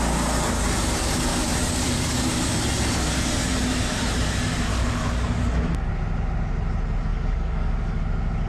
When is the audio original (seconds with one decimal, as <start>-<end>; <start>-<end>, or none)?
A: 0.0-1.3; 2.6-4.7; 5.9-7.1; 8.0-8.5